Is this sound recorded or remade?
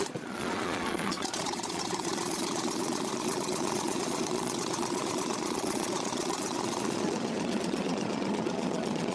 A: remade